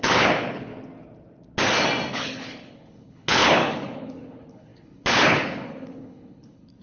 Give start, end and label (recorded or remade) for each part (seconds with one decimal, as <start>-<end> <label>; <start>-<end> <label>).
0.0-0.7 remade; 0.7-2.1 recorded; 2.1-6.8 remade